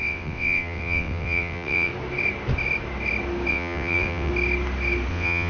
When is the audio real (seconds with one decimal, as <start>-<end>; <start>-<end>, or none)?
1.9-3.5; 4.3-5.1